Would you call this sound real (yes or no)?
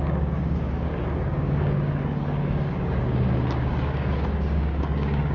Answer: no